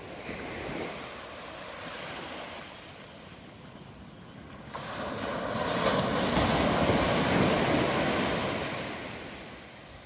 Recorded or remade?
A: recorded